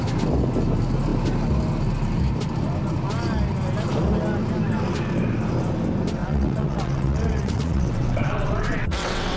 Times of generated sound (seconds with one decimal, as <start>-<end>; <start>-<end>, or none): 6.2-9.4